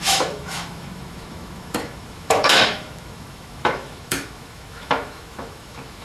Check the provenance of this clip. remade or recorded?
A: remade